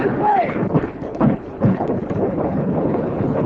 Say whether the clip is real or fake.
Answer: fake